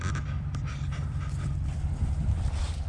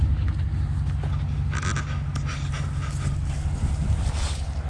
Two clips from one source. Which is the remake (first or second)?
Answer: first